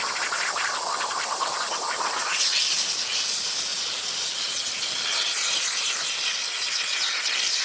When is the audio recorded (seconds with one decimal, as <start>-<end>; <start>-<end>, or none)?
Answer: 0.0-7.6